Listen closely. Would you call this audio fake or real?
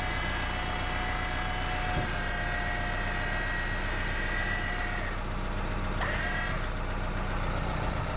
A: real